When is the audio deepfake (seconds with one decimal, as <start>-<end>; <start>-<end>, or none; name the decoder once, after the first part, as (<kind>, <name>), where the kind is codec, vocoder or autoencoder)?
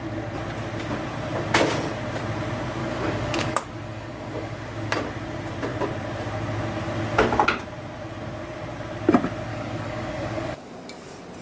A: 2.8-4.6 (codec, DAC); 9.5-10.7